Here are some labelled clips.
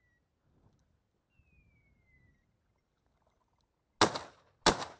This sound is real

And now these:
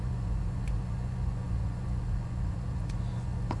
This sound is fake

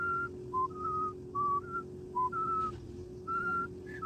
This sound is real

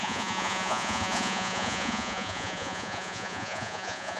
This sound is fake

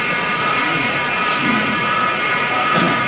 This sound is fake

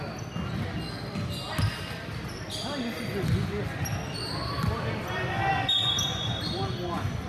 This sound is real